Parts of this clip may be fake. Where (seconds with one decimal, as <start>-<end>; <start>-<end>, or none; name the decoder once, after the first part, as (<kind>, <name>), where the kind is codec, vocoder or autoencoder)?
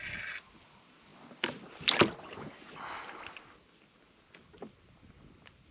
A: none